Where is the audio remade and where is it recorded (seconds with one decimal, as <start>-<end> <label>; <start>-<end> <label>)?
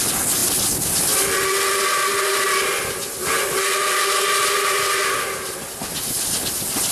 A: 0.0-6.9 recorded